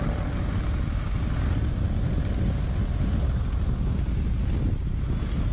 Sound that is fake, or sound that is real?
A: real